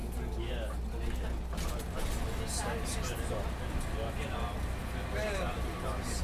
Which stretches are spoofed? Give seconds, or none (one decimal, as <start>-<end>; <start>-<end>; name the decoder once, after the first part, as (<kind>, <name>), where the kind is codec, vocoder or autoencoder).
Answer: none